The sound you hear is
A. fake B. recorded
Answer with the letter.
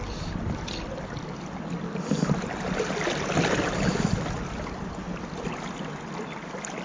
B